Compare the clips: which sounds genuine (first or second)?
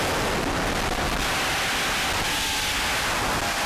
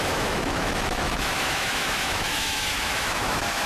first